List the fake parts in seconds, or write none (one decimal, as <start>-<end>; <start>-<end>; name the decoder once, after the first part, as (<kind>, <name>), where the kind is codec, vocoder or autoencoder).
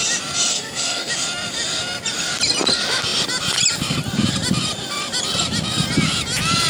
0.5-1.1 (codec, SNAC)